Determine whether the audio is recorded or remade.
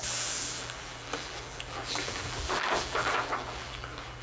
remade